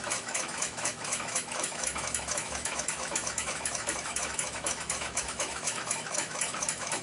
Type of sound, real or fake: fake